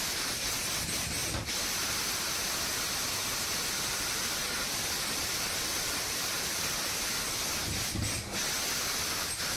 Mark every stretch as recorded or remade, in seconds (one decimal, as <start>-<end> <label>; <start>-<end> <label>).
0.0-9.6 recorded